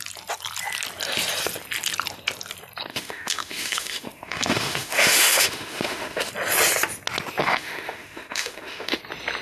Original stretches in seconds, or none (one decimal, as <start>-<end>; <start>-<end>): 0.0-2.9; 6.3-7.4; 9.0-9.4